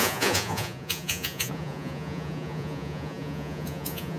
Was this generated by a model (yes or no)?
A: yes